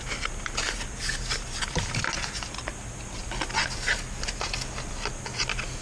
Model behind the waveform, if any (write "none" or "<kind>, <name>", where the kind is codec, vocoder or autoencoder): none